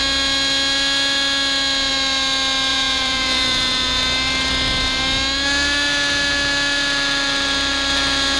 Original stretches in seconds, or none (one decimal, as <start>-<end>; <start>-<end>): 0.0-2.7; 4.0-8.4